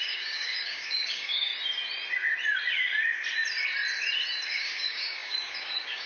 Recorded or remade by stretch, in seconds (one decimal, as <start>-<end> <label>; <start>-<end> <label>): 0.0-1.5 remade; 1.5-4.5 recorded; 4.5-6.1 remade